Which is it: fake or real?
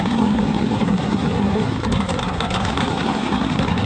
fake